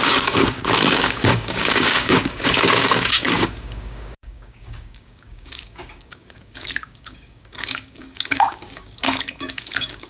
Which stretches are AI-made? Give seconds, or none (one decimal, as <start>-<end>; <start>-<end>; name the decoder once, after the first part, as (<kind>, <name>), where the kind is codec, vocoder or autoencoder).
0.0-10.1 (codec, DAC)

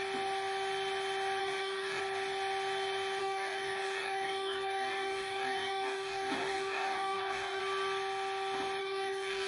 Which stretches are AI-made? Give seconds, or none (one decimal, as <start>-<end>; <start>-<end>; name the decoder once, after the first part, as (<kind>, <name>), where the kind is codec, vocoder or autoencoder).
1.4-2.0 (codec, DAC); 3.2-7.6; 8.8-9.5

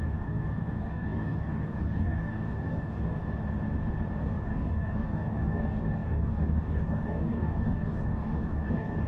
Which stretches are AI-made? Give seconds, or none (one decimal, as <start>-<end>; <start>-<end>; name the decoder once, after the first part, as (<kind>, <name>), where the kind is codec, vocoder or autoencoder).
0.0-3.2 (codec, DAC); 4.2-9.1

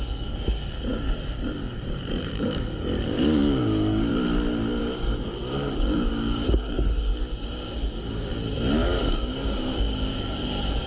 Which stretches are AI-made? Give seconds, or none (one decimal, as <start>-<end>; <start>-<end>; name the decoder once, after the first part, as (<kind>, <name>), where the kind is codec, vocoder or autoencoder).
0.0-4.1 (codec, DAC); 4.8-7.1; 7.7-8.3; 9.0-10.9

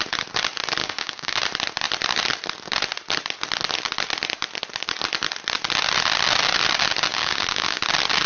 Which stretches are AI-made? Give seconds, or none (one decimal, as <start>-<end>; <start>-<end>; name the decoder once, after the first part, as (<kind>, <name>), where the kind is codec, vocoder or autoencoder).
0.8-1.4 (codec, DAC); 7.1-7.8